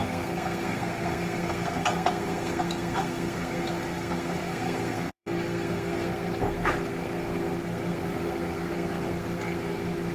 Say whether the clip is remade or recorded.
remade